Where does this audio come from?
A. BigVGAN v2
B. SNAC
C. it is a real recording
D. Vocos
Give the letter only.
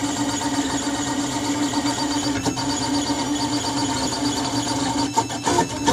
C